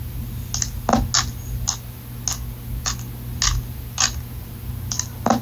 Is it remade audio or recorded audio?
recorded